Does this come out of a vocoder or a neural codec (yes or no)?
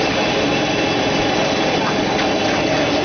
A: no